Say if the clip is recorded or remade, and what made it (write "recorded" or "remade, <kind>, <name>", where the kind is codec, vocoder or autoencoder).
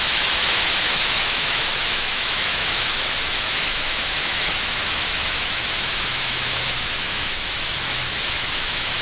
remade, autoencoder, DAC-VAE